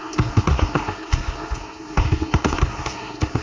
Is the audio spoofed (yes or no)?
yes